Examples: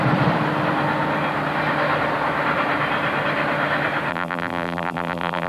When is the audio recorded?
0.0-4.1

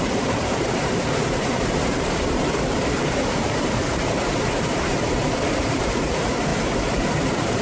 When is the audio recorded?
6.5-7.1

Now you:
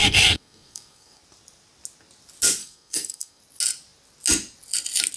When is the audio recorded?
1.2-2.6; 3.4-5.2